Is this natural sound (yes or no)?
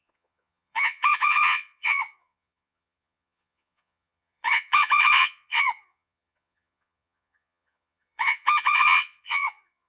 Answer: no